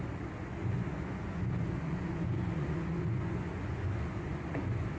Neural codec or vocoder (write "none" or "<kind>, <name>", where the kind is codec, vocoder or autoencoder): vocoder, Vocos